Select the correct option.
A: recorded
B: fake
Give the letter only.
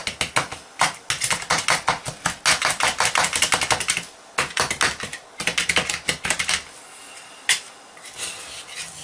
A